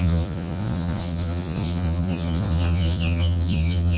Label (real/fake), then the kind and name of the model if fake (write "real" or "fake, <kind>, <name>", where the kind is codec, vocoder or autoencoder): fake, vocoder, Vocos